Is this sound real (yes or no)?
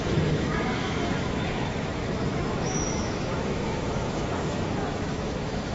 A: no